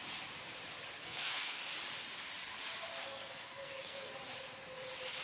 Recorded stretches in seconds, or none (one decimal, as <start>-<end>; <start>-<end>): 0.0-1.0; 1.6-3.0; 4.1-5.2